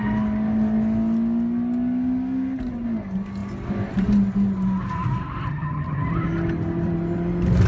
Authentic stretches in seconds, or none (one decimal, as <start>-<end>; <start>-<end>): 0.0-5.5; 6.0-7.7